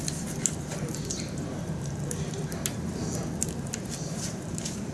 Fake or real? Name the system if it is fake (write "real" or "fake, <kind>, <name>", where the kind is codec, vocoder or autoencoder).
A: fake, vocoder, BigVGAN v2